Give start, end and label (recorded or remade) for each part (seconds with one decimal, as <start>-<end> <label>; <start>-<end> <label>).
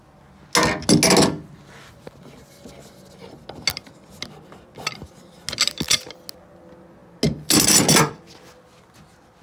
0.0-9.4 recorded